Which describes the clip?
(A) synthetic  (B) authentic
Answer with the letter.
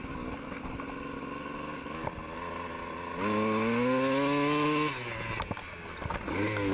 B